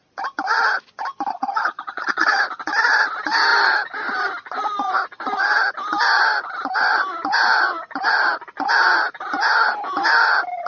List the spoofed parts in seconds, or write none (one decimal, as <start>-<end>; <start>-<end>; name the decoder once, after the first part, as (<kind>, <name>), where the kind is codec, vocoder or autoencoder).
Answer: 1.3-2.4 (vocoder, HiFi-GAN)

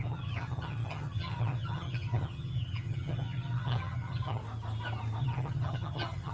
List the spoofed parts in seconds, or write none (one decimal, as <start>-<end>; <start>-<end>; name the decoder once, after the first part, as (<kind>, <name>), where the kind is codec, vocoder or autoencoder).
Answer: 0.0-4.4 (vocoder, HiFi-GAN); 5.2-6.3